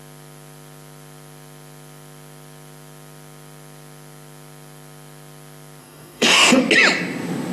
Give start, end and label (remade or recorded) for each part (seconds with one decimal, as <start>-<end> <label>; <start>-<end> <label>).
0.0-5.8 recorded; 5.8-6.6 remade; 6.6-7.5 recorded